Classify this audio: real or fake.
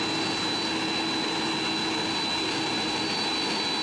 real